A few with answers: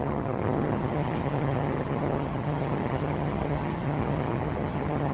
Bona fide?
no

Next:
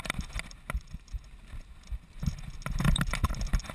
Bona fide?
yes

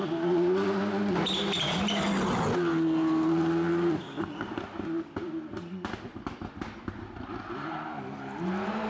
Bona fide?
yes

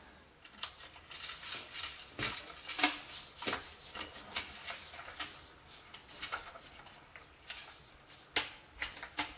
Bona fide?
yes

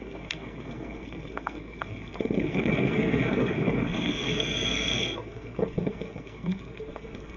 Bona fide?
no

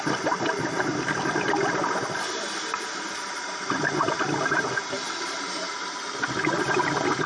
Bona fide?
yes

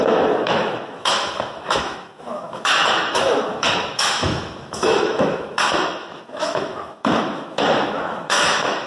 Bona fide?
no